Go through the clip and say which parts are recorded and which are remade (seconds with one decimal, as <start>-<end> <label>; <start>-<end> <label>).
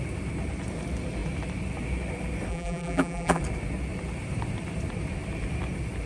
0.0-2.5 recorded; 2.5-3.4 remade; 3.4-6.1 recorded